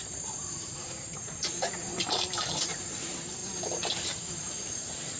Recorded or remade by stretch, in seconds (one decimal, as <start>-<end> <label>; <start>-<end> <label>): 0.0-3.4 remade; 3.4-4.0 recorded; 4.0-5.2 remade